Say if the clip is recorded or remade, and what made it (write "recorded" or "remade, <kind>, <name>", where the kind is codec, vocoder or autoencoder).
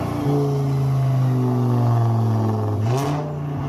recorded